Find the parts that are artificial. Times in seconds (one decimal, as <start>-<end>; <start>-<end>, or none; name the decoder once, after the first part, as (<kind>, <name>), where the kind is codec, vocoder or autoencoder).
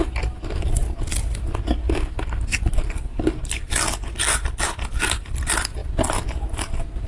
none